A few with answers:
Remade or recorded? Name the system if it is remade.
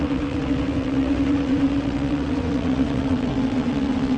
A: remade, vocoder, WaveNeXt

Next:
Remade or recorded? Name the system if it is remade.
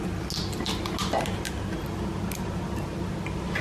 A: recorded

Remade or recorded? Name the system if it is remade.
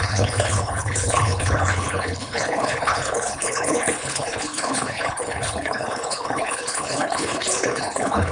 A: remade, codec, HILCodec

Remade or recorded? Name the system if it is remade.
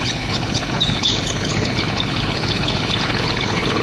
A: remade, codec, HILCodec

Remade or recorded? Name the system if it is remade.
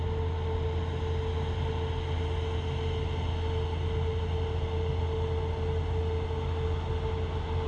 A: recorded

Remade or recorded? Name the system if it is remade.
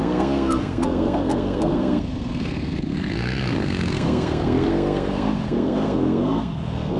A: remade, codec, SNAC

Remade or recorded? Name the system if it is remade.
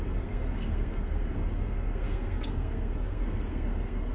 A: remade, codec, SNAC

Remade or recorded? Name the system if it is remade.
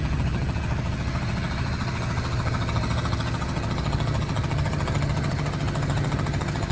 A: remade, vocoder, HiFi-GAN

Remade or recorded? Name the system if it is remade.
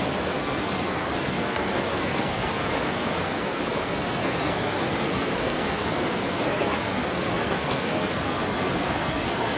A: remade, codec, SNAC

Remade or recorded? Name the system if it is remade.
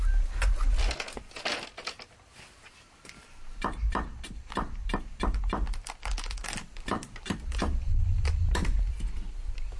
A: recorded